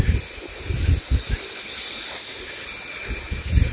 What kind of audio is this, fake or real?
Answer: real